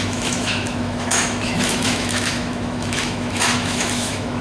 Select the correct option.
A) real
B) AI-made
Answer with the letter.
B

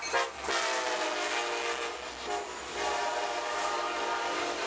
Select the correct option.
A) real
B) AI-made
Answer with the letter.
A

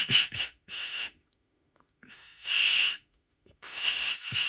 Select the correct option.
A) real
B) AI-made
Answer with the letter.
B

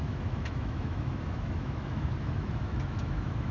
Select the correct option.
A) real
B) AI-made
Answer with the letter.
B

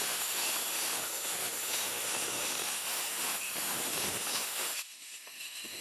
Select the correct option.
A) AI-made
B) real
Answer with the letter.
A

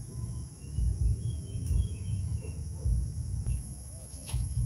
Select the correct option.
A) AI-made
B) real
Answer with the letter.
A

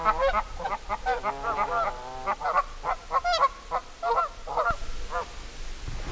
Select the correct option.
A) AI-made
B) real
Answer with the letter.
B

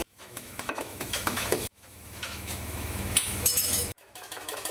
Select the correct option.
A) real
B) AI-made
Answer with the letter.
B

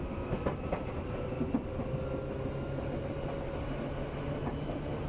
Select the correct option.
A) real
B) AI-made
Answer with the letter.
A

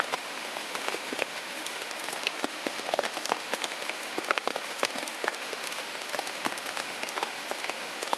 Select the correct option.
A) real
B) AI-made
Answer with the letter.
B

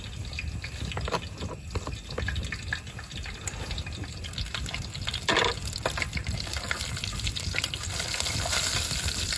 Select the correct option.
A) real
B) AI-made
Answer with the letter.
A